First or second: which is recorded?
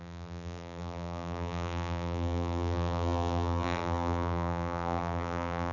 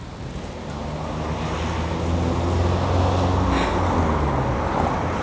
second